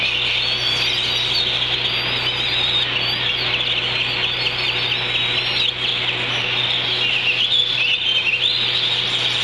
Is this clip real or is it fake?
real